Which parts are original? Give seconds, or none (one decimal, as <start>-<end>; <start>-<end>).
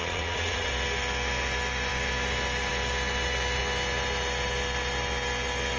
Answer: 0.7-5.8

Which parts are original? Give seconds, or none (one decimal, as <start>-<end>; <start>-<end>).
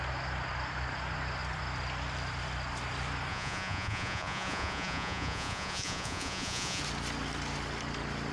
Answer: 0.0-3.3; 6.8-8.3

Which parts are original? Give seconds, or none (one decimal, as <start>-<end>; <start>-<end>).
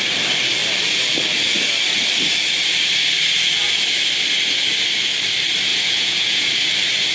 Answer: 0.0-5.7; 6.5-7.1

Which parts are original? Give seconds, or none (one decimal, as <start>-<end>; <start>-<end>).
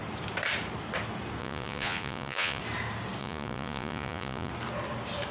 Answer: 0.0-1.4; 2.6-3.2; 4.5-5.3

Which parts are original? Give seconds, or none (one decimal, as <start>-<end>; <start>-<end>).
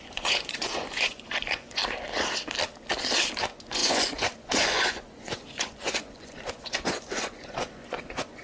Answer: 1.8-3.4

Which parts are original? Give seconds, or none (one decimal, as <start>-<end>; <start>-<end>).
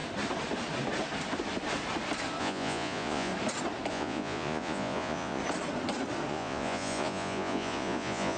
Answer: 0.0-2.4; 3.3-3.9; 5.4-6.3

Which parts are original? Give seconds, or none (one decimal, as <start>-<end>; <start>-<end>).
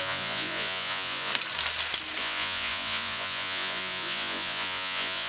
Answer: 1.3-2.2